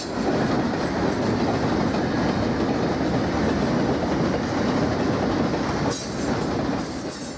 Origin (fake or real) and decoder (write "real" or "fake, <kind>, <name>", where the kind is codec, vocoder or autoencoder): real